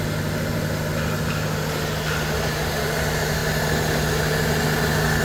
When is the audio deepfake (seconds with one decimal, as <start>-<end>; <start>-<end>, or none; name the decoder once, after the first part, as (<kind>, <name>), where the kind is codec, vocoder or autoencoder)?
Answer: none